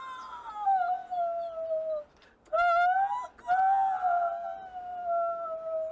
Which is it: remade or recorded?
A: recorded